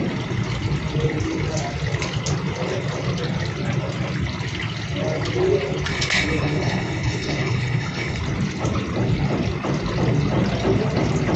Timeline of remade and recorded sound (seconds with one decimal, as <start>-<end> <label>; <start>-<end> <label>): 0.0-5.9 recorded; 5.9-8.2 remade; 8.2-11.4 recorded